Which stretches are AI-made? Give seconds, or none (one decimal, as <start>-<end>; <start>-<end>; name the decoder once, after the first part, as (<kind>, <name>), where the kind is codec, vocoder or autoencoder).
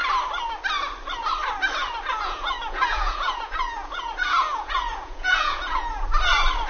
2.1-6.1 (vocoder, Vocos)